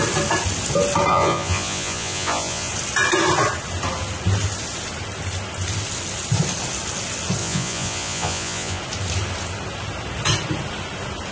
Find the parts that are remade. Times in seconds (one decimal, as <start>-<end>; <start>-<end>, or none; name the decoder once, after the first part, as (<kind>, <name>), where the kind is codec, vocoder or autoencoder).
1.1-2.7 (vocoder, Vocos); 7.4-8.8